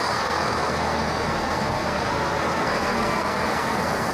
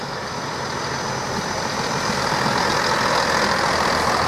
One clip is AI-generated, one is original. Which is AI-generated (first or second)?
first